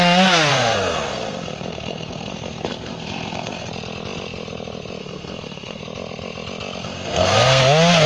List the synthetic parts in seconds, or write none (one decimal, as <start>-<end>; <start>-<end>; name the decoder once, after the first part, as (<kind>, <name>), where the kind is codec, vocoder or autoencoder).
0.5-3.7 (codec, SNAC); 5.0-5.8; 6.8-7.6